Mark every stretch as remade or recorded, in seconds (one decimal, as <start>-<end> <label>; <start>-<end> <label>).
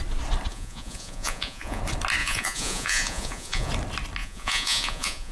0.0-0.5 recorded; 0.5-1.8 remade; 1.8-2.2 recorded; 2.2-3.7 remade; 3.7-4.2 recorded; 4.2-5.3 remade